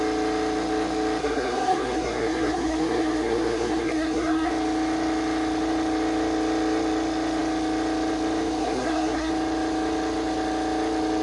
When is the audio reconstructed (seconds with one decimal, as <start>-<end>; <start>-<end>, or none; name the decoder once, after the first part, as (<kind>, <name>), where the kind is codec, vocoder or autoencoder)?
1.2-4.5 (codec, SNAC); 8.6-9.3